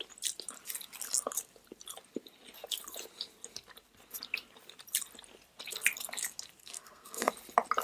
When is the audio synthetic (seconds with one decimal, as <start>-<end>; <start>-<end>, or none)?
6.6-7.3